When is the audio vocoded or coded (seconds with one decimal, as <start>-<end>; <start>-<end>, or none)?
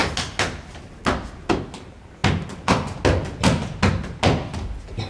none